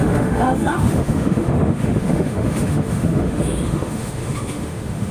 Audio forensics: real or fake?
fake